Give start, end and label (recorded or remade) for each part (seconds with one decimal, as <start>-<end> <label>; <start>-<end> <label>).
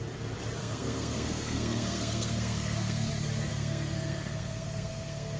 0.0-0.6 recorded; 0.6-3.1 remade; 3.1-3.5 recorded; 3.5-5.4 remade